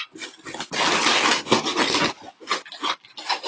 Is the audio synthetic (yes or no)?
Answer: no